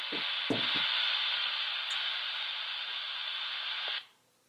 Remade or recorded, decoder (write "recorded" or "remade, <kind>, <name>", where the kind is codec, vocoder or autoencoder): recorded